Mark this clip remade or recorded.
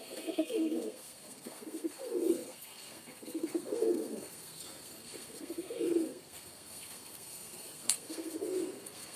remade